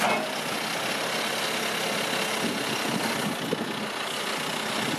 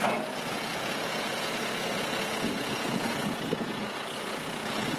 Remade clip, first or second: second